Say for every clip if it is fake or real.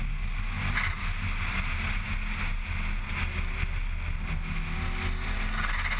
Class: real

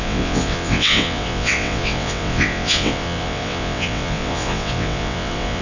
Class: fake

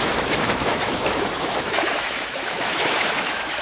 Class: fake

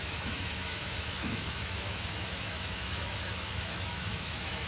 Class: fake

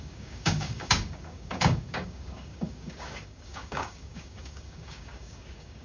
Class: fake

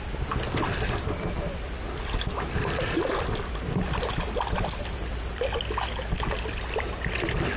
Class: real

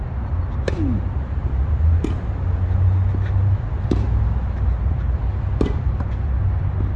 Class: real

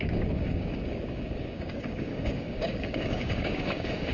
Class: fake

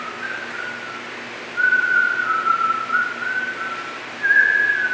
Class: real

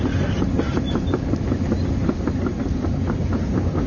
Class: real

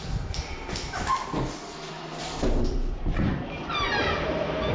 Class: fake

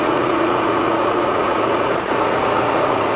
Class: fake